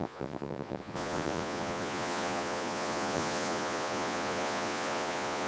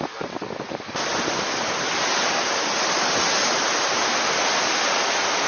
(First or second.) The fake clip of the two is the first